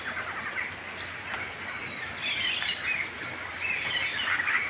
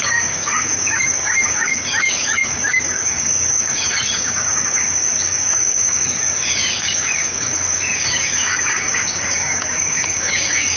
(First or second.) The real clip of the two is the first